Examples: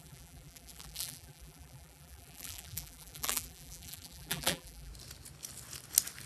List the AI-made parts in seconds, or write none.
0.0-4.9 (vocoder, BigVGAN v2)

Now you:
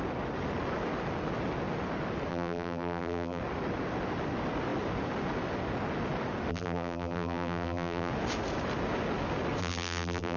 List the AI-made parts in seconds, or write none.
2.3-3.4 (vocoder, BigVGAN v2); 6.5-8.1; 9.6-10.4